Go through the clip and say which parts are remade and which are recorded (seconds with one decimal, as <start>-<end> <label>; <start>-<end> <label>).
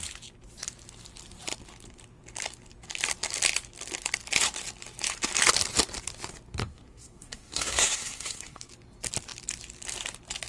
0.0-6.6 recorded; 6.6-8.7 remade; 8.7-10.5 recorded